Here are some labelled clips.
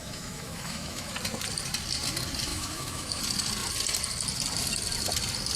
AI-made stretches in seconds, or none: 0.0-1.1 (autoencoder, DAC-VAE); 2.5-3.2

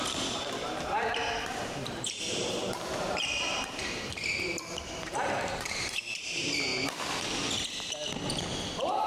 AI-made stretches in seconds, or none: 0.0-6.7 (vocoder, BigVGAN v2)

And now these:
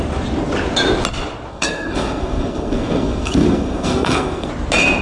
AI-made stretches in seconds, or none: 1.5-4.5 (codec, SNAC)